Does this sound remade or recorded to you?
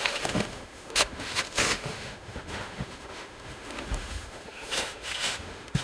remade